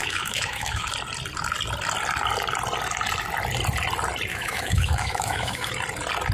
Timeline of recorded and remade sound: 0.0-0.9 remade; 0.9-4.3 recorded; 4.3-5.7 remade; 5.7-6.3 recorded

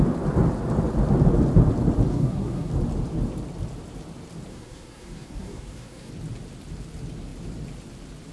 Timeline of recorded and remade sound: 0.0-2.1 recorded; 2.1-2.7 remade; 2.7-4.5 recorded; 4.5-6.1 remade; 6.1-8.3 recorded

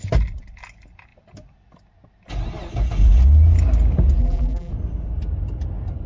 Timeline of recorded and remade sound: 0.0-4.2 recorded; 4.2-4.7 remade; 4.7-6.1 recorded